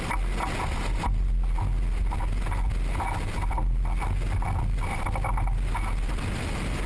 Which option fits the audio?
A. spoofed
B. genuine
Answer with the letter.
B